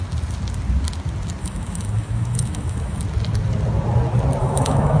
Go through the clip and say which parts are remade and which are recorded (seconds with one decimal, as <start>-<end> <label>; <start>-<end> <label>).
0.0-1.4 recorded; 1.4-3.0 remade; 3.0-4.4 recorded; 4.4-5.0 remade